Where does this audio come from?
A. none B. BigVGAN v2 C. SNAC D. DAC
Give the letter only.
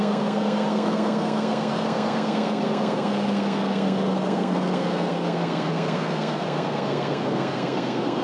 C